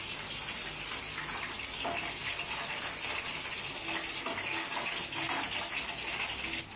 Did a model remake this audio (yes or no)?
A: no